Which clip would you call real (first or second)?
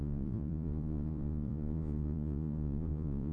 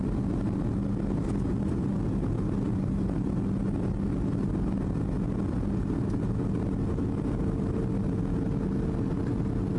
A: second